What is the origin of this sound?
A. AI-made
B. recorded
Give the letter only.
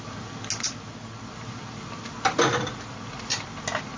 B